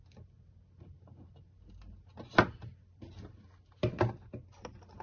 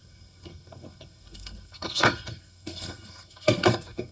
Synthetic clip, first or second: second